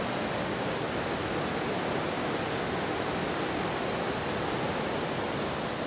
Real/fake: real